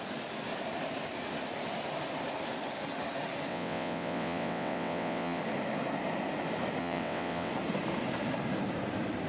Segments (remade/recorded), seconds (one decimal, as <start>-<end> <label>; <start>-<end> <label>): 0.0-3.5 recorded; 3.5-5.4 remade; 5.4-6.8 recorded; 6.8-7.5 remade; 7.5-9.3 recorded